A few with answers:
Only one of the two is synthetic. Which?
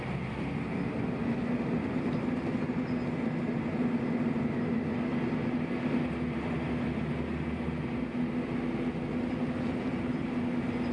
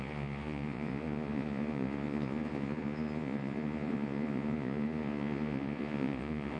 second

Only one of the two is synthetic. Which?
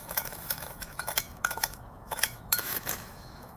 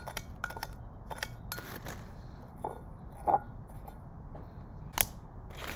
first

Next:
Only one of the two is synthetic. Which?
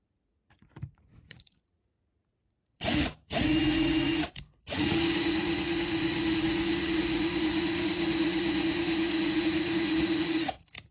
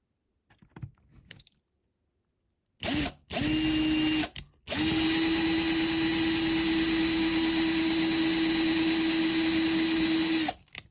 first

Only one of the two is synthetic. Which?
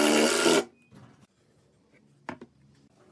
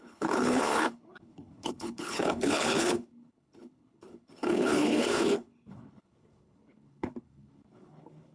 second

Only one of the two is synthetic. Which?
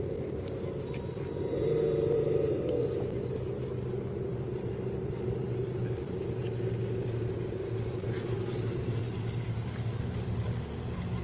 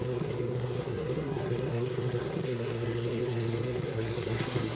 second